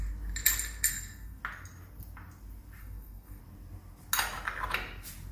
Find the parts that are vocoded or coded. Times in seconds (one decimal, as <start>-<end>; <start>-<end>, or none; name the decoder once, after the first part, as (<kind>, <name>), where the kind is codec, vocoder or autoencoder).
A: 0.9-1.4 (codec, SNAC); 2.8-3.4